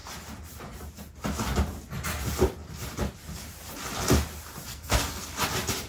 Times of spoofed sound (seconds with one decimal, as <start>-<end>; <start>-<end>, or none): 4.7-5.3